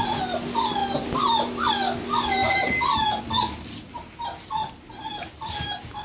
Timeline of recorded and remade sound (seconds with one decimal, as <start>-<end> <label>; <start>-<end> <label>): 0.0-0.8 recorded; 0.8-1.7 remade; 1.7-2.4 recorded; 2.4-3.2 remade; 3.2-6.0 recorded